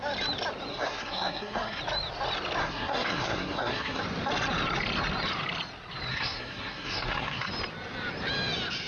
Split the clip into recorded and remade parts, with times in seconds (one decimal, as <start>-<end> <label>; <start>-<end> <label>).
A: 0.0-0.7 recorded; 0.7-1.8 remade; 1.8-2.6 recorded; 2.6-4.0 remade; 4.0-6.1 recorded; 6.1-7.5 remade; 7.5-8.9 recorded